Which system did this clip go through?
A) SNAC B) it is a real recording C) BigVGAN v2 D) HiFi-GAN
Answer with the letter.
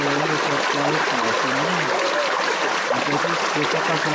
B